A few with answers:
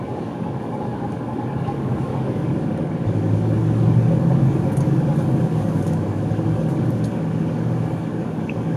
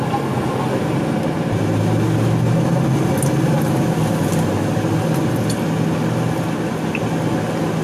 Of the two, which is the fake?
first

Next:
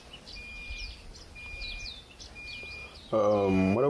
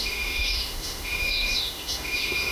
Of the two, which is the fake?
second